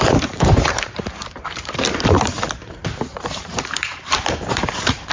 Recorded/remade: remade